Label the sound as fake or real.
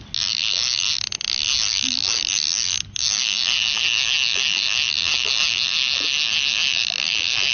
real